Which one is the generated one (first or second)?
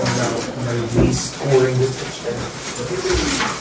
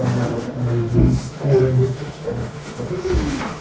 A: second